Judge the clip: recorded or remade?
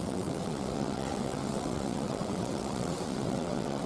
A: remade